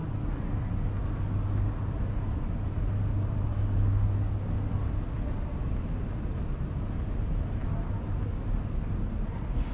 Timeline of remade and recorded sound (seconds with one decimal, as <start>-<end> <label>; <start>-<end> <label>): 0.0-9.7 recorded